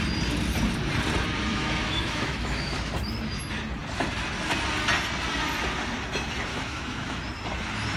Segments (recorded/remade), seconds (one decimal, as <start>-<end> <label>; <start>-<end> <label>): 0.0-1.5 recorded; 1.5-2.9 remade; 2.9-6.5 recorded; 6.5-7.2 remade; 7.2-8.0 recorded